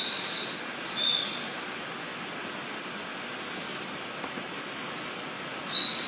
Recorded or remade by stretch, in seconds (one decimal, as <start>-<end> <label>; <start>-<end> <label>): 0.0-6.1 recorded